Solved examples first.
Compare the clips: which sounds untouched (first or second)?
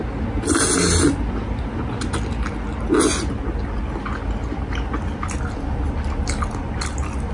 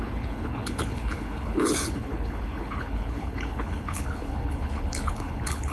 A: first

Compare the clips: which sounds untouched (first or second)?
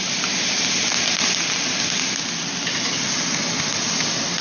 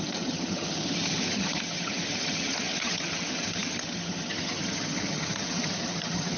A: first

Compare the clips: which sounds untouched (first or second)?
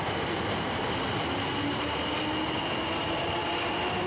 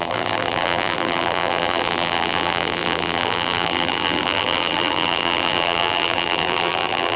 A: first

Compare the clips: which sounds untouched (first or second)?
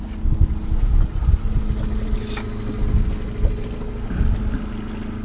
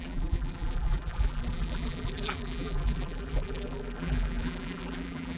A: first